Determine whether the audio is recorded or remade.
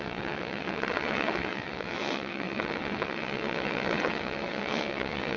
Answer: remade